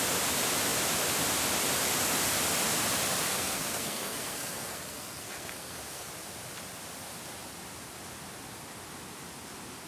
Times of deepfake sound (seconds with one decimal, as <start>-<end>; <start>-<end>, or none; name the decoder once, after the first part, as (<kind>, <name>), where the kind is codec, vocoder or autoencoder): 3.3-6.1 (codec, SNAC)